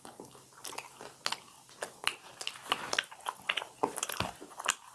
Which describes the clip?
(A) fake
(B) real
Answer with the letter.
B